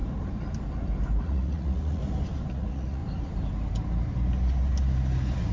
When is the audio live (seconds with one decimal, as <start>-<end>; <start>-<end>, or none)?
0.0-1.2; 2.0-2.5; 3.0-5.5